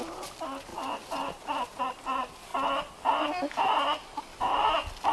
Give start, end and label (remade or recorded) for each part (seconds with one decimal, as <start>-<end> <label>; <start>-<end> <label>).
0.0-5.1 recorded